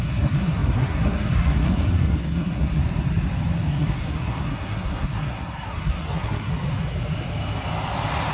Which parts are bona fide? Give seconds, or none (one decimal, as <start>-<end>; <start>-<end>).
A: 2.8-3.7; 6.5-8.3